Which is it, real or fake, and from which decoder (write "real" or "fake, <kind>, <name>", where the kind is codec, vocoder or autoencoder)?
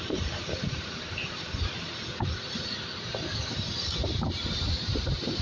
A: fake, vocoder, BigVGAN v2